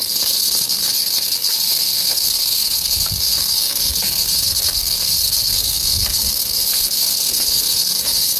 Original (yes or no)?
no